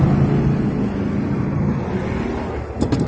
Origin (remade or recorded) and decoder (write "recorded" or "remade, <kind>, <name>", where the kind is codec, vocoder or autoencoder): recorded